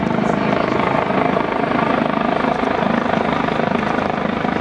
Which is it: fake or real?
real